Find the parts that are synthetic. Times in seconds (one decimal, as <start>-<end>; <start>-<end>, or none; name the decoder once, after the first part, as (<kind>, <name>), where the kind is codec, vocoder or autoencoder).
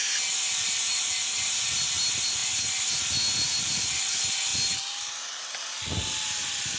none